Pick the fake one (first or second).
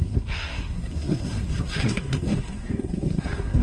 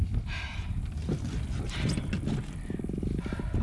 first